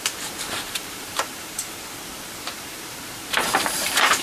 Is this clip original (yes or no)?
no